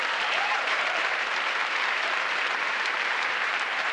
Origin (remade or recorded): remade